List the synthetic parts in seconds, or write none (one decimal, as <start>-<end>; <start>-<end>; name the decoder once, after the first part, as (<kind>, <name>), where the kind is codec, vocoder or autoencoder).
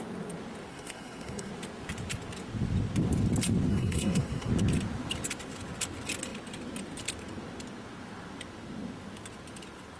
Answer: 0.7-1.5 (codec, SNAC); 3.7-4.5